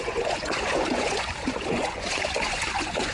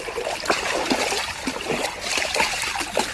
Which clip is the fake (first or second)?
first